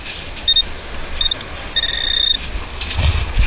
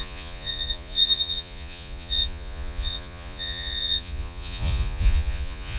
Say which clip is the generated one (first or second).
second